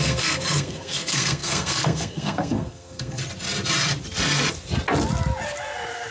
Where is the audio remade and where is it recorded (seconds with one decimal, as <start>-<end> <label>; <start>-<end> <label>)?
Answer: 0.0-3.2 remade; 3.2-6.1 recorded